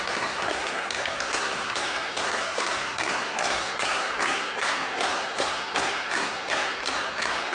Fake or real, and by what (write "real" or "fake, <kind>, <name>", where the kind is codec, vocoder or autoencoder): fake, codec, SNAC